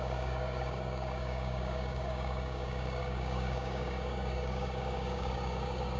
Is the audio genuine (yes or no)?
no